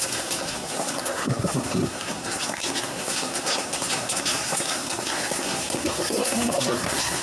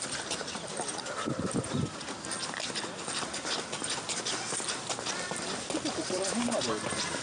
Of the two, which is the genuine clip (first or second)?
second